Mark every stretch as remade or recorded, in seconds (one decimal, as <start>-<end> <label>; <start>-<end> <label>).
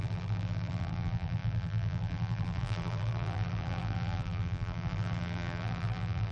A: 0.0-6.3 remade